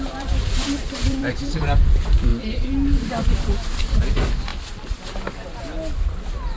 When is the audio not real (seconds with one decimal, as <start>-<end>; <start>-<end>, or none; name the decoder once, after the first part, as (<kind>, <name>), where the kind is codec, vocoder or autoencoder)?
0.0-2.3 (vocoder, BigVGAN v2); 3.2-4.5; 6.1-6.6